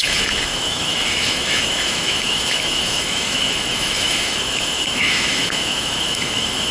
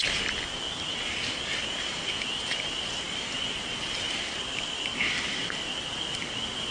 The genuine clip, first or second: second